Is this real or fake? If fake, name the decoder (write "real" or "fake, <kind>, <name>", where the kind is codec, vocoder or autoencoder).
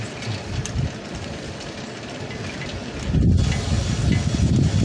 real